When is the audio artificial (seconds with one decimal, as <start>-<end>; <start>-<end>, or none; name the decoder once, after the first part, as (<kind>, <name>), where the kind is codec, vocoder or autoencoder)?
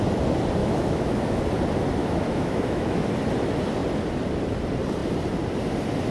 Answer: 0.6-1.4 (autoencoder, DAC-VAE); 2.0-3.1